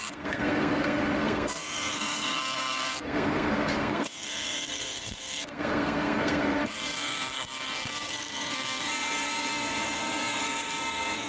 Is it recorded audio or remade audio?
remade